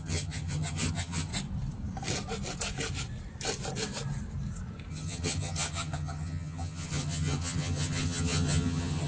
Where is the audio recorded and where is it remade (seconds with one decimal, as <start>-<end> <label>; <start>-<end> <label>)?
0.0-1.3 remade; 1.3-4.9 recorded; 4.9-9.1 remade